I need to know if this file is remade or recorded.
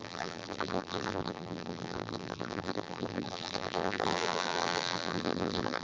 remade